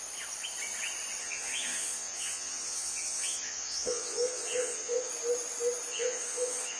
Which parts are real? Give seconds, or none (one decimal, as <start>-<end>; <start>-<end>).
0.0-1.2; 5.1-5.9